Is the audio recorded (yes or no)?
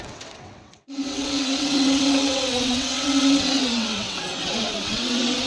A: no